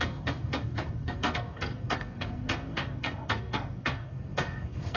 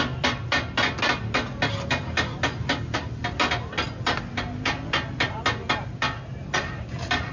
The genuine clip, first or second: second